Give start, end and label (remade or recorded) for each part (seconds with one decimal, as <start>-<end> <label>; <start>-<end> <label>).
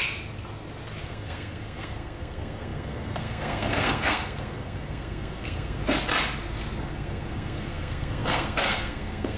0.0-1.0 recorded; 1.0-5.8 remade; 5.8-6.8 recorded; 6.8-9.4 remade